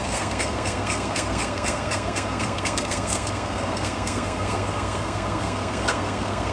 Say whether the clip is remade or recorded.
remade